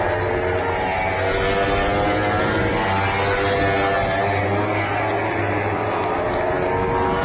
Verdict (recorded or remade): recorded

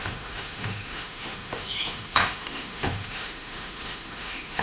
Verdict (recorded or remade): remade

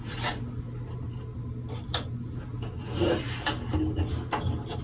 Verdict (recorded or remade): recorded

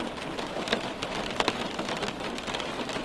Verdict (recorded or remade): recorded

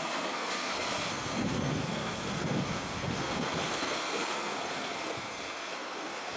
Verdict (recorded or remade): remade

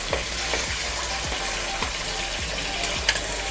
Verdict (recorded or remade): recorded